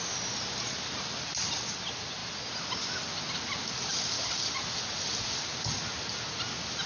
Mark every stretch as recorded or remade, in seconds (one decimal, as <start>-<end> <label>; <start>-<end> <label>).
0.0-6.9 recorded